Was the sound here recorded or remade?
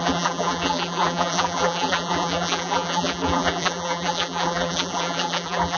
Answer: remade